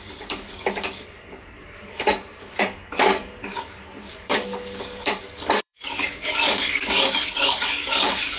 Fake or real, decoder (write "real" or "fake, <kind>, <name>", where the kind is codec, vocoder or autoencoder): fake, codec, DAC